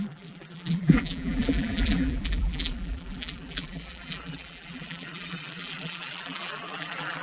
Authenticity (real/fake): fake